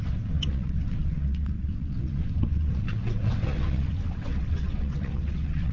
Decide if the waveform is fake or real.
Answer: fake